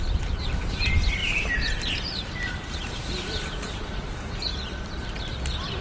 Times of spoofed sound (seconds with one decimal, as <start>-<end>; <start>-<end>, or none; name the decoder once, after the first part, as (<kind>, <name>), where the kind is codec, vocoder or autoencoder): 0.0-4.5 (vocoder, BigVGAN v2)